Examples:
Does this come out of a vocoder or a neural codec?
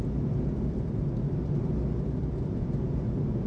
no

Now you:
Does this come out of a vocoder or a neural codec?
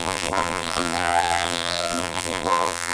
yes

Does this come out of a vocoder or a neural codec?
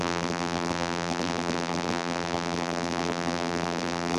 yes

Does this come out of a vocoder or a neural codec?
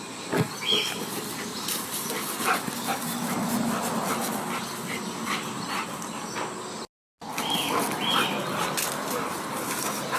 no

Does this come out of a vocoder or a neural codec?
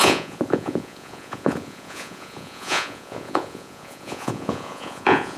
yes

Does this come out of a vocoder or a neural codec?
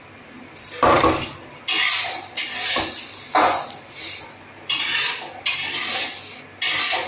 no